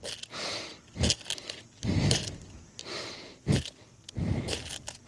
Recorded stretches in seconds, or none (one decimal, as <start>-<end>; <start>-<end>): 0.0-5.1